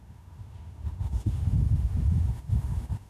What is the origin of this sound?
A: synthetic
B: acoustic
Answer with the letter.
A